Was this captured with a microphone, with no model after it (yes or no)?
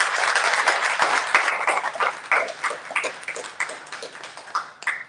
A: yes